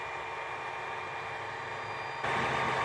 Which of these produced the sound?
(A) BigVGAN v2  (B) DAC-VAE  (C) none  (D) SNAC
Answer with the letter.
C